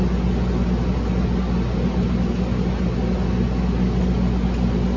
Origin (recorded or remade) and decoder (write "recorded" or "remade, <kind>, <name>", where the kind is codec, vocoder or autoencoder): recorded